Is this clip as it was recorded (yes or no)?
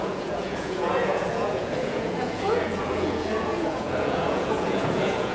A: no